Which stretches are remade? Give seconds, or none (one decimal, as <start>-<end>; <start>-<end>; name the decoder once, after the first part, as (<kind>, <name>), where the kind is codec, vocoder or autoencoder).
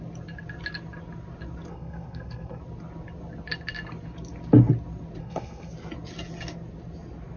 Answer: 1.7-2.6 (codec, SNAC); 5.2-5.7